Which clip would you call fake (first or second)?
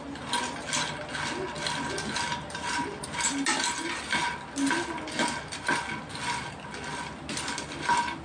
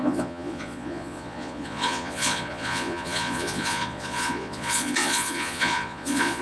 second